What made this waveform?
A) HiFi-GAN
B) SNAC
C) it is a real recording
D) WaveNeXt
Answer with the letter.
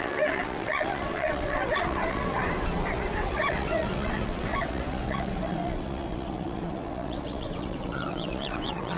D